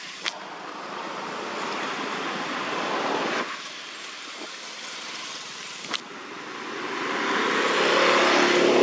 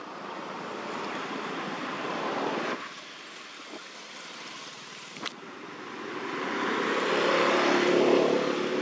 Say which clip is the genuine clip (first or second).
first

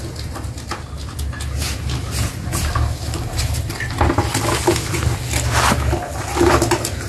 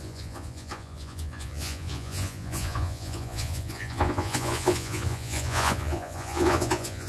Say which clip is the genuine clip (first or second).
first